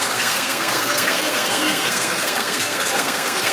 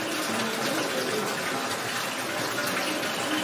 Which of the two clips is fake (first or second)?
first